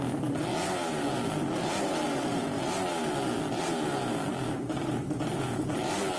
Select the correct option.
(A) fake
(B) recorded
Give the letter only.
B